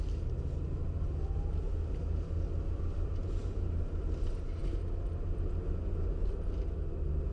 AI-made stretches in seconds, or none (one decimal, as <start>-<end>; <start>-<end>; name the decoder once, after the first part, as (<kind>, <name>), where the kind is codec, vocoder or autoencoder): none